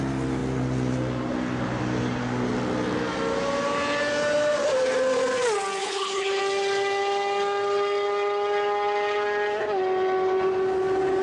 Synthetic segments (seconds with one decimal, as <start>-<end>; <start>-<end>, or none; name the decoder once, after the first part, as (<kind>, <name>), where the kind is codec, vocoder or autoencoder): 5.8-6.4 (codec, HILCodec)